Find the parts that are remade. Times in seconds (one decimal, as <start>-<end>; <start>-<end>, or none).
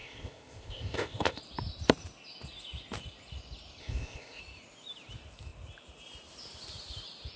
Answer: 0.0-1.4; 3.8-4.4